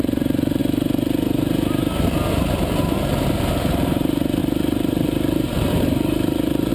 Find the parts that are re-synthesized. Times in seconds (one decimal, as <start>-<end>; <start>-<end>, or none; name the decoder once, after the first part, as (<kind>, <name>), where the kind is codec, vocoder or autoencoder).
0.0-0.6 (vocoder, BigVGAN v2); 3.0-6.7